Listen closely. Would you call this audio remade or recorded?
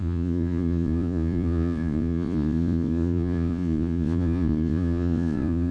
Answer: remade